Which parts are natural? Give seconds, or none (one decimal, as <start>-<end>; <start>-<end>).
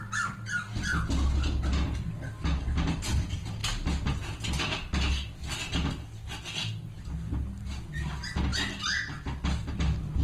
0.0-10.2